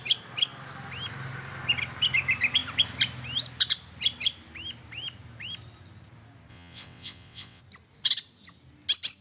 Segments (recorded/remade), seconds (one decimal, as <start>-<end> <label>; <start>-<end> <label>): 0.0-6.5 recorded; 6.5-7.6 remade; 7.6-9.2 recorded